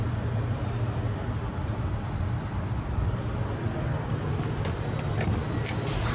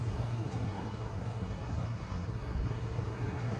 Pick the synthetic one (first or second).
second